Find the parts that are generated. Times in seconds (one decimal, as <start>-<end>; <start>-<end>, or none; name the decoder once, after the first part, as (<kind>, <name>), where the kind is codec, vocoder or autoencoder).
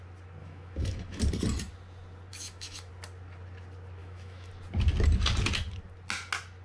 0.4-1.2 (autoencoder, DAC-VAE); 2.3-2.9; 4.0-4.5